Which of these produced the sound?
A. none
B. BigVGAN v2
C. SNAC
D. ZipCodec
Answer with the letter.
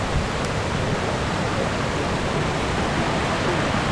A